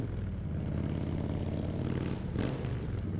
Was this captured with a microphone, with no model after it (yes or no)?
yes